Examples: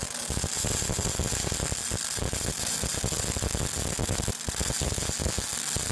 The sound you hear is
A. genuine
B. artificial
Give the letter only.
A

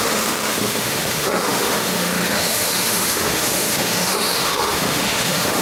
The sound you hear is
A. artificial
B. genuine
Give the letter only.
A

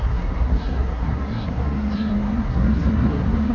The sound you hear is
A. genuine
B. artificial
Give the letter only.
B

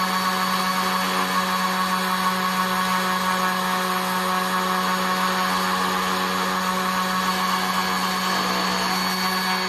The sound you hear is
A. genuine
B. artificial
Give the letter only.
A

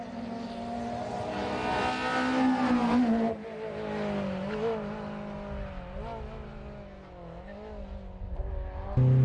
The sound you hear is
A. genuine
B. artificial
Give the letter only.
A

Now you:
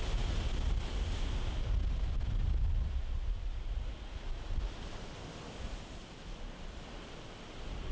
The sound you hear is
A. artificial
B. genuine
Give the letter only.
B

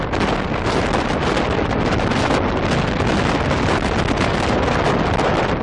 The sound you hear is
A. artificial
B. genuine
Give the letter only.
B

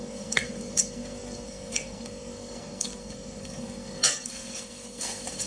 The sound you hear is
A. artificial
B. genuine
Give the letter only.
A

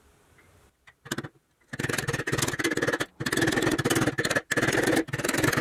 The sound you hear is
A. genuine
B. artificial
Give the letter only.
A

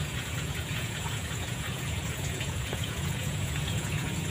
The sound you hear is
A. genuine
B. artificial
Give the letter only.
B